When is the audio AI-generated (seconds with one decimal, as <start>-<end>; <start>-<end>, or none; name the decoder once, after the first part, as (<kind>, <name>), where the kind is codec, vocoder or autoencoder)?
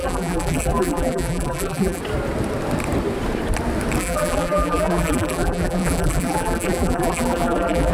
0.0-2.0 (vocoder, BigVGAN v2); 4.0-7.9